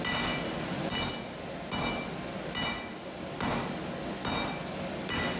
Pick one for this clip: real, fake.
real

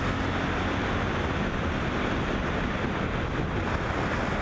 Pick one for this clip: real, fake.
real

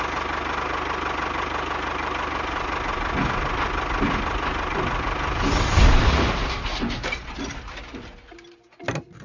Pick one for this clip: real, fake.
real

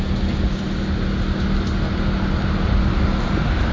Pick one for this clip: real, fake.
real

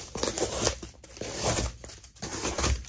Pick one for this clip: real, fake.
real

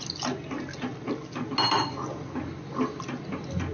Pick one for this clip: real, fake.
real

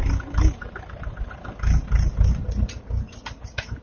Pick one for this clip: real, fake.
real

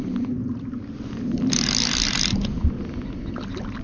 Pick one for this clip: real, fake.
real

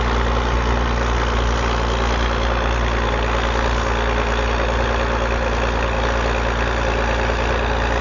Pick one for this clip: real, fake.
real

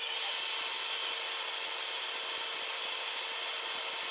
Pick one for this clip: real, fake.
real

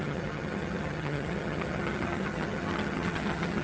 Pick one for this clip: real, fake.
fake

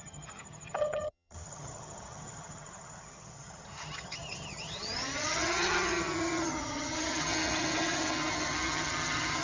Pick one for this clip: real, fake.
fake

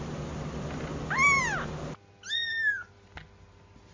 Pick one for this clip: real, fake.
real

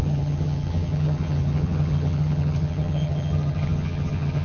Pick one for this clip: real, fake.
fake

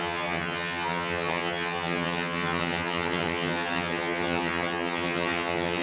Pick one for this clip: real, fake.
fake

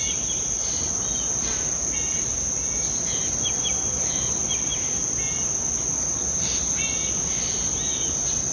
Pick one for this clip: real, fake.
real